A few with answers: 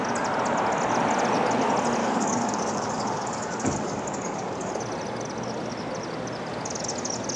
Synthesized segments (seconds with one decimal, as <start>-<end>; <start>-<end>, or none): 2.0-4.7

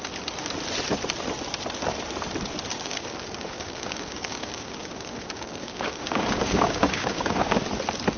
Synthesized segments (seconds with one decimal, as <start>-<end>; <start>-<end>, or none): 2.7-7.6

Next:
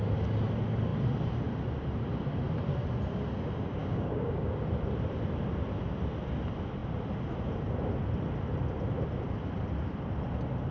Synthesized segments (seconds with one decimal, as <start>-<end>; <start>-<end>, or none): 3.8-4.6

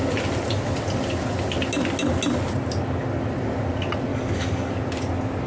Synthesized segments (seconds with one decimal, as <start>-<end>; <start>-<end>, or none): 4.1-4.7

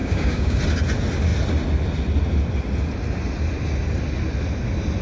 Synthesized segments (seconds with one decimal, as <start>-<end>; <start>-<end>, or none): 0.0-0.6